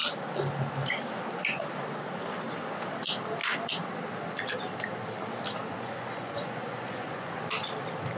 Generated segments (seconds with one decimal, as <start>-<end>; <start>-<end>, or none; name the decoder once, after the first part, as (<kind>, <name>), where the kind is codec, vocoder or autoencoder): 5.7-7.4 (vocoder, Vocos)

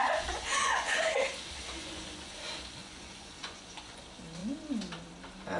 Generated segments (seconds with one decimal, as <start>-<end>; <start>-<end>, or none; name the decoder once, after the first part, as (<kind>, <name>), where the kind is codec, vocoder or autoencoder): 0.0-1.0 (vocoder, Vocos); 1.8-4.0

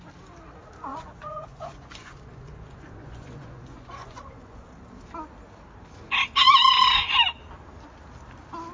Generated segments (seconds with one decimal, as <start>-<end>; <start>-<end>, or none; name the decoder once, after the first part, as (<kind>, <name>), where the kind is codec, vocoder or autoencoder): 0.9-4.7 (vocoder, Vocos)

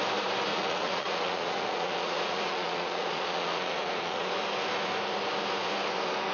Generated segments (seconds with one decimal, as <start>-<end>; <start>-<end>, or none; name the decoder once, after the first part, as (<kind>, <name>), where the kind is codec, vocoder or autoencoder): 0.5-4.3 (vocoder, Vocos)

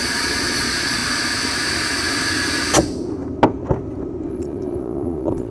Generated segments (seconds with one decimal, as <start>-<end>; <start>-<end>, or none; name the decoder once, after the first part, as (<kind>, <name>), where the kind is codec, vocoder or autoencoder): 0.0-1.0 (vocoder, Vocos); 4.3-5.5

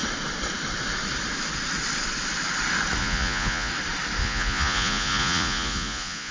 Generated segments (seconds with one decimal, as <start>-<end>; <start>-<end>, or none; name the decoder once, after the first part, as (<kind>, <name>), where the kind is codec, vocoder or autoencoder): 3.0-3.7 (vocoder, Vocos); 4.2-6.3

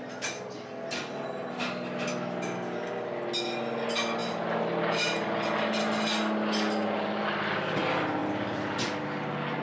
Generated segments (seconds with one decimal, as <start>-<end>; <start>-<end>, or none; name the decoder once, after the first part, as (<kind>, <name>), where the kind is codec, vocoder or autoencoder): none

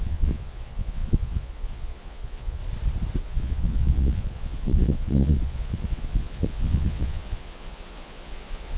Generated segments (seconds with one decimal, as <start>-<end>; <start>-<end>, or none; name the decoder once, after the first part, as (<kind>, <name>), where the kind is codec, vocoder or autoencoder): 0.0-2.6 (vocoder, Vocos); 3.2-8.8